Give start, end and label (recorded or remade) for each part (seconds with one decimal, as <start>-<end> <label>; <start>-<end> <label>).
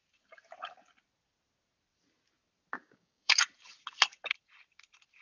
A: 0.0-2.8 recorded; 2.8-3.4 remade; 3.4-5.2 recorded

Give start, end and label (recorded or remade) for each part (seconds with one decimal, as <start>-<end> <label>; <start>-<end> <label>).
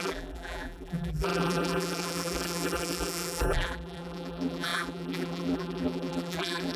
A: 0.0-6.8 remade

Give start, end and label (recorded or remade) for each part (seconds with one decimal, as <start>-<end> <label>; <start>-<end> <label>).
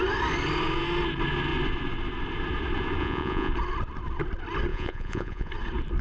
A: 0.0-3.0 recorded; 3.0-3.5 remade; 3.5-4.7 recorded; 4.7-5.5 remade; 5.5-6.0 recorded